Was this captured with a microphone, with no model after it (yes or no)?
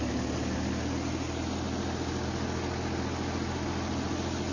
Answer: yes